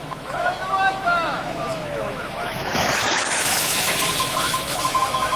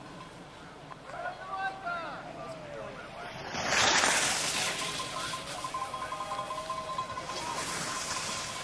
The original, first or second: second